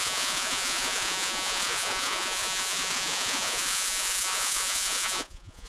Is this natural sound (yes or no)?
no